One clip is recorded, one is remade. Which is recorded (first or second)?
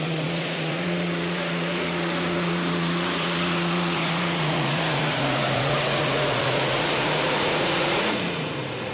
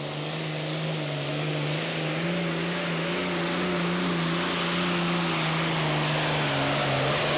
second